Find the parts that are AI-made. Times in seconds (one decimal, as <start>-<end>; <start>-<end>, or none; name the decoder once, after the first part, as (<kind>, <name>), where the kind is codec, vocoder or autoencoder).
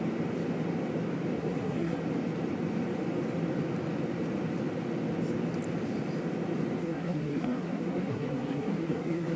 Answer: 1.4-2.0 (codec, SNAC); 6.8-9.4